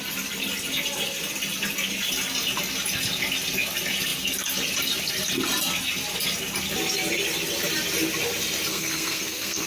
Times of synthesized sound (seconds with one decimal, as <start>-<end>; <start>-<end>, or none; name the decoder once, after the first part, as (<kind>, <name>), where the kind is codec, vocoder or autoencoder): 8.7-9.7 (codec, SNAC)